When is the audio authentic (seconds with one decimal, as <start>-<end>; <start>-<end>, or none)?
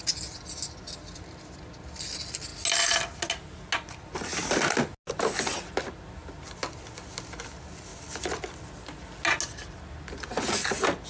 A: 0.0-11.1